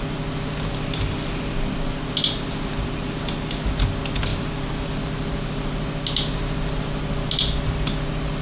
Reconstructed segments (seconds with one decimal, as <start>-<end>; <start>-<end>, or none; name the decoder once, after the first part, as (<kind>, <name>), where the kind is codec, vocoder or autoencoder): 4.3-4.9 (vocoder, BigVGAN v2)